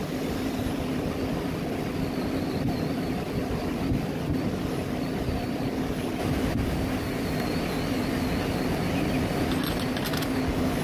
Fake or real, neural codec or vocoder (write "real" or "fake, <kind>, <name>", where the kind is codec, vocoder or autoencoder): real